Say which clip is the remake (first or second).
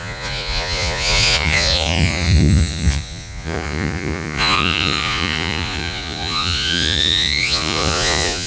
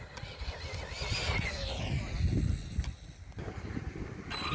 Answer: first